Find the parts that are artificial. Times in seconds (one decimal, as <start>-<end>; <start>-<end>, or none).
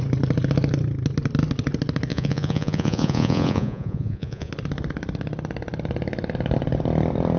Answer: 2.1-4.5